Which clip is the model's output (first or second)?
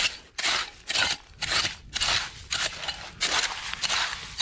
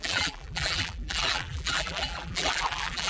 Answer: second